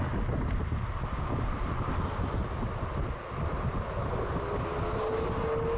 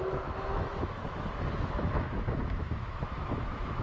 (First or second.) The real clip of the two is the first